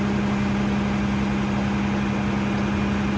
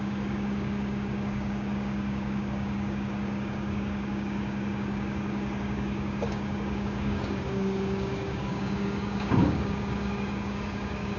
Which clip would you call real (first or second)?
first